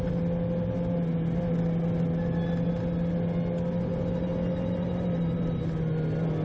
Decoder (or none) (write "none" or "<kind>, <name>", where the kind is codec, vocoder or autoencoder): none